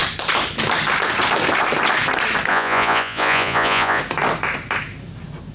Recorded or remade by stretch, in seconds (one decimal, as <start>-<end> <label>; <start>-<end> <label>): 0.0-2.5 recorded; 2.5-4.0 remade; 4.0-5.5 recorded